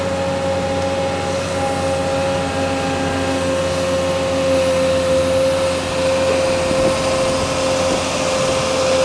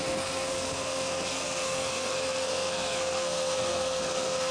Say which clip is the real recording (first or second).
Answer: first